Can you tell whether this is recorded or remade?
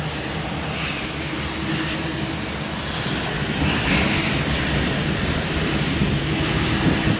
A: recorded